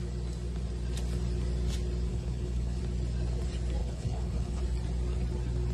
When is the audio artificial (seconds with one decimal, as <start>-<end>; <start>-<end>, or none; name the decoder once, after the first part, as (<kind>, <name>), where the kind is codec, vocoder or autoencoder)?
2.1-2.8 (codec, HILCodec); 3.8-4.6